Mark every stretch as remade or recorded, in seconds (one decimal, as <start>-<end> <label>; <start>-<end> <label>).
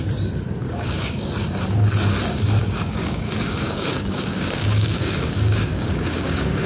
0.0-0.6 recorded; 0.6-1.3 remade; 1.3-2.6 recorded; 2.6-6.7 remade